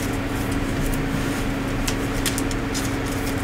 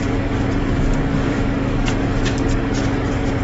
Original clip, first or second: first